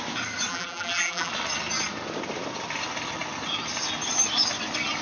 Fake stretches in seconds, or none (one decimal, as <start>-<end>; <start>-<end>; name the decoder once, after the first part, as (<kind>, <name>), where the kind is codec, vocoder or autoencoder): 0.5-1.3 (vocoder, BigVGAN v2)